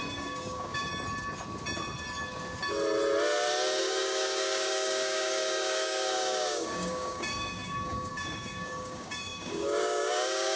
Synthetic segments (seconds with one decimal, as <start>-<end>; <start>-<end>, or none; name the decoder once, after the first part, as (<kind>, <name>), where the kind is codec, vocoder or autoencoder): 0.0-0.9 (codec, DAC); 3.8-10.6